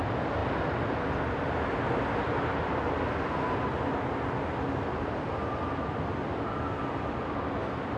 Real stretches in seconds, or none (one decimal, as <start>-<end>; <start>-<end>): 0.0-8.0